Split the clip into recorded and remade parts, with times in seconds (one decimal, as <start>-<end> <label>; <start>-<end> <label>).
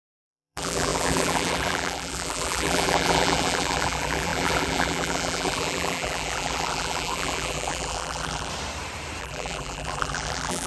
0.0-8.5 remade; 8.5-9.2 recorded; 9.2-10.7 remade